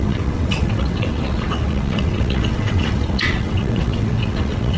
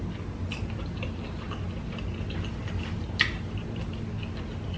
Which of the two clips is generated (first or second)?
first